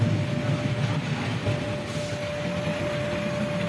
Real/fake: real